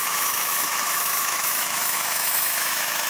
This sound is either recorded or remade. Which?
remade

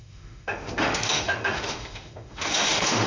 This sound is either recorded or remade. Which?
remade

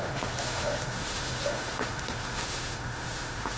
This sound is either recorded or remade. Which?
remade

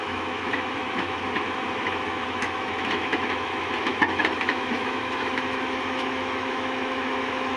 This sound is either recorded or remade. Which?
remade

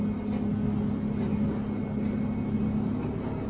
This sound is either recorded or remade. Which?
recorded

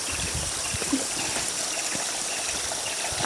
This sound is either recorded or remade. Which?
recorded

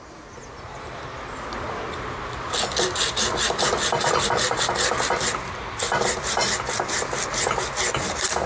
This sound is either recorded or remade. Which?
recorded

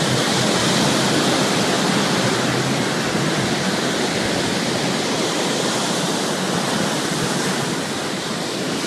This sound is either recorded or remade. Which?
recorded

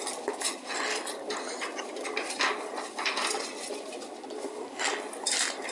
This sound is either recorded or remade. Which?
recorded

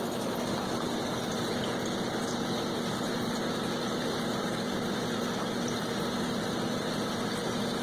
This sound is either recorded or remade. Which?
recorded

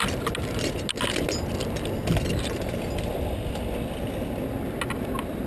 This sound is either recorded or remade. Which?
recorded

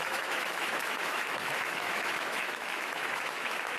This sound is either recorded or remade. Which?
remade